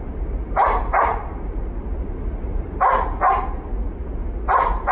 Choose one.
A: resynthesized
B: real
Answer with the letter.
B